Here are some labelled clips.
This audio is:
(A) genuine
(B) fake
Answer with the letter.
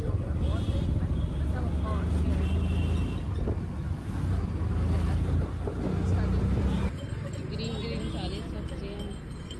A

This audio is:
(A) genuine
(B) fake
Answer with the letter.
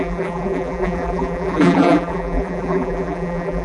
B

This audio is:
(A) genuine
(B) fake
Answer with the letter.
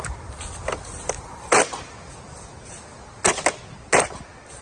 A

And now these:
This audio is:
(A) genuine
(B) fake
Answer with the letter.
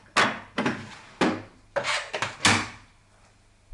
A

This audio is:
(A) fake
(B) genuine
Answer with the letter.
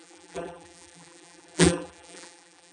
A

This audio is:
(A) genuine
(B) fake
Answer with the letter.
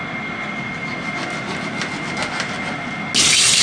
A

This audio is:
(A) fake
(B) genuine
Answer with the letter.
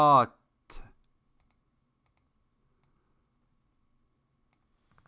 B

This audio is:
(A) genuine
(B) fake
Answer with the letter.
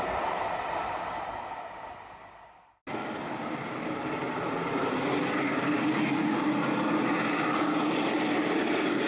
A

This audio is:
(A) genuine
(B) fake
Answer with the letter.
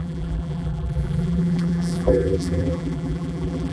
B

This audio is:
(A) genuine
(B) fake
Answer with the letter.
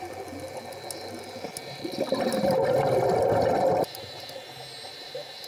A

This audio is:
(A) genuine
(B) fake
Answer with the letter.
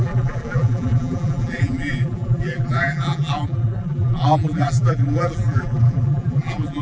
B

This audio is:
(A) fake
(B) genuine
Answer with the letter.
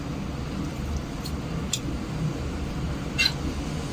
B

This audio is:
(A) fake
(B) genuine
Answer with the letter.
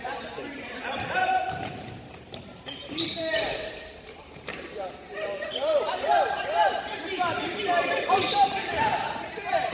A